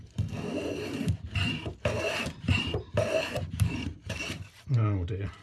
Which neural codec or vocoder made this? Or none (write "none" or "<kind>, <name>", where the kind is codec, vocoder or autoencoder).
vocoder, BigVGAN v2